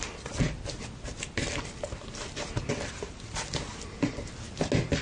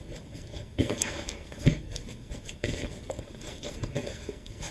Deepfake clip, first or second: second